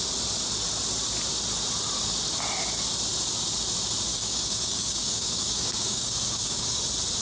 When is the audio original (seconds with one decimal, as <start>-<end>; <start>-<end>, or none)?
0.0-4.1; 6.8-7.2